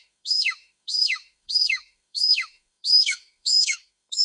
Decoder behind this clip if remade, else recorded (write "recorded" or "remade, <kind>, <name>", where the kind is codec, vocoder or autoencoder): remade, autoencoder, DAC-VAE